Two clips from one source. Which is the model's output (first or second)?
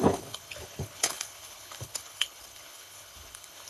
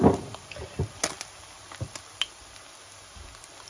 first